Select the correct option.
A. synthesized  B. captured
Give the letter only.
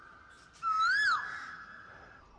B